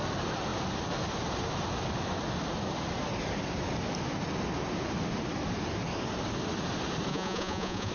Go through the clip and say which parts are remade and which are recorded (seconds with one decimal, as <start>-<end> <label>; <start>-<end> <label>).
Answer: 0.0-7.1 recorded; 7.1-7.9 remade